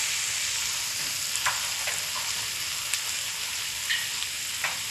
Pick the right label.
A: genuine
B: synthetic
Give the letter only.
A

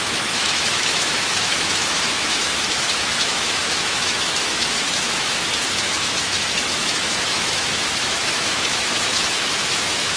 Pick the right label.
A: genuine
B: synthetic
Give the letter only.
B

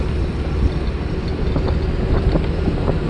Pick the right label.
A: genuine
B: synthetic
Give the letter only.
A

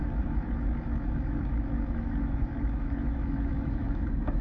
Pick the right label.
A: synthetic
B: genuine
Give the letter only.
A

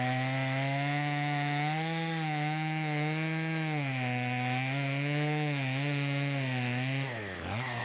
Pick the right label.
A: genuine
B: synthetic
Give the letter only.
B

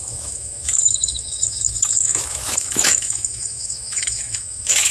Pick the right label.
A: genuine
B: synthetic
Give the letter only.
B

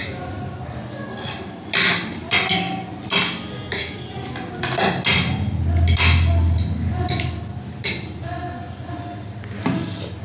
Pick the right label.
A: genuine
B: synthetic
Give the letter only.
A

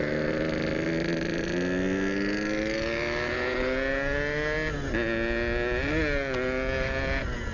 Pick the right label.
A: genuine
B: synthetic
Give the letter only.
A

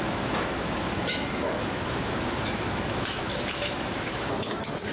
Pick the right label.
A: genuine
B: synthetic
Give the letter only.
B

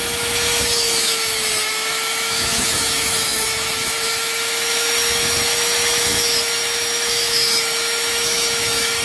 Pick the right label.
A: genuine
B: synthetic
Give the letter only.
B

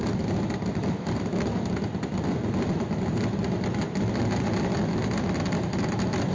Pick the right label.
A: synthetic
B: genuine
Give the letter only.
B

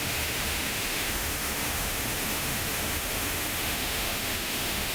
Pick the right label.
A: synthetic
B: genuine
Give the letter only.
A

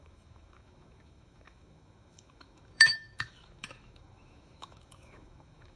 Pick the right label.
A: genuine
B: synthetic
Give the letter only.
B